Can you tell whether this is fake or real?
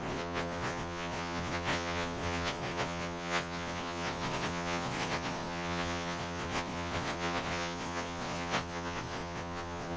fake